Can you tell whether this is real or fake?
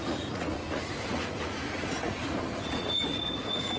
fake